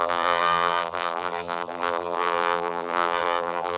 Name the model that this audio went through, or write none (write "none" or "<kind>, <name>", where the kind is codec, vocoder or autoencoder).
vocoder, BigVGAN v2